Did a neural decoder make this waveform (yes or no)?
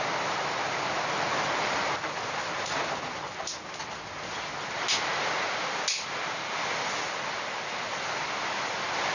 no